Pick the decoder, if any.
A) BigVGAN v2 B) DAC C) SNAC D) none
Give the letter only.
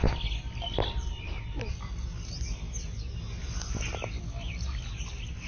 D